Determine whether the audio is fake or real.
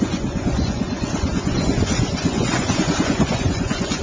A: fake